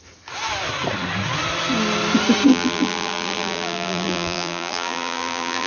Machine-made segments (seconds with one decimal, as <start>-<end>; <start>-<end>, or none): 2.5-5.7